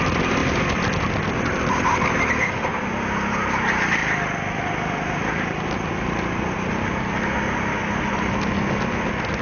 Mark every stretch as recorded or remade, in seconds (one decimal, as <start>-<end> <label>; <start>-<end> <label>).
0.0-9.4 recorded